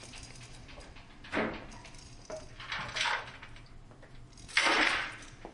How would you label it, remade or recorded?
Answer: recorded